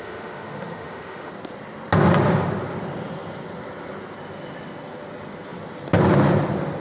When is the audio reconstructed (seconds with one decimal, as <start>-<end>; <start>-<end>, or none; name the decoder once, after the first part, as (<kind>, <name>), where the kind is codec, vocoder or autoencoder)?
0.0-1.3 (autoencoder, DAC-VAE)